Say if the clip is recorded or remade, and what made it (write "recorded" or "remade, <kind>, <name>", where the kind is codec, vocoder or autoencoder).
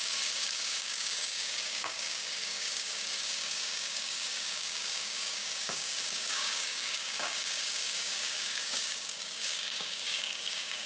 remade, codec, DAC